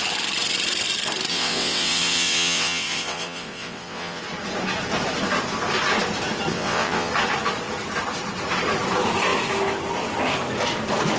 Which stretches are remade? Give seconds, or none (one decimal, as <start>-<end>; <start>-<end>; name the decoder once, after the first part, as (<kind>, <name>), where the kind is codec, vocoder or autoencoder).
1.3-4.2 (vocoder, WaveNeXt); 6.5-7.1